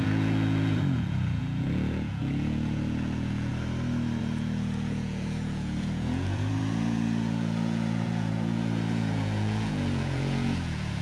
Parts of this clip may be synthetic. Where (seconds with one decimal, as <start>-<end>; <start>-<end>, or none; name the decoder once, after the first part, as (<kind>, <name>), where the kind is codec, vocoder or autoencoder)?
0.0-3.5 (vocoder, Vocos); 4.2-11.0